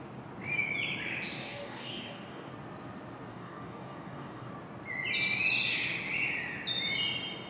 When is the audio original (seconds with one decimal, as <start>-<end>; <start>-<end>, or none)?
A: 0.0-1.4; 2.5-3.3; 4.5-7.5